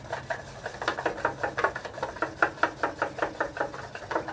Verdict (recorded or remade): recorded